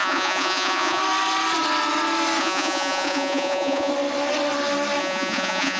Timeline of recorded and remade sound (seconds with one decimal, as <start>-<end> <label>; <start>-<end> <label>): 0.0-1.0 remade; 1.0-2.4 recorded; 2.4-3.9 remade; 3.9-5.0 recorded; 5.0-5.8 remade